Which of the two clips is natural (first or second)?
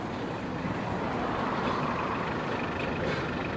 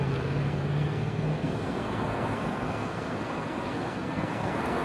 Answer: first